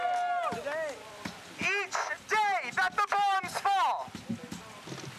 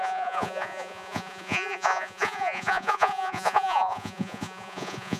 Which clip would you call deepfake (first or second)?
second